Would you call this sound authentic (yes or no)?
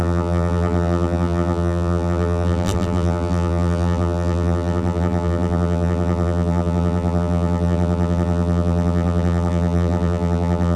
no